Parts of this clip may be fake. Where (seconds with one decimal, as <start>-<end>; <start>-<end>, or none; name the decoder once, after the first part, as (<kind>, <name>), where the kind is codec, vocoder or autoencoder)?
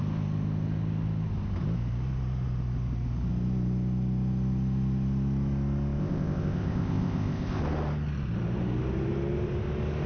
6.0-7.6 (codec, ZipCodec)